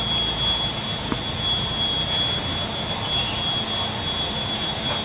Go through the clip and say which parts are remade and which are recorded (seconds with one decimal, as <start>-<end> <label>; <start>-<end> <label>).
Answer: 0.0-5.0 recorded